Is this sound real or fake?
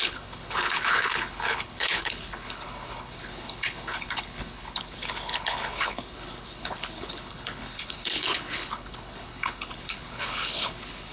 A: fake